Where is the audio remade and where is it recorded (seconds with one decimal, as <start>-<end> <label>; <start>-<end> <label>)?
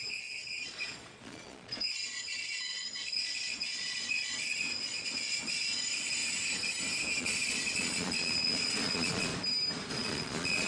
0.0-6.2 remade; 6.2-7.2 recorded; 7.2-9.3 remade; 9.3-9.9 recorded; 9.9-10.7 remade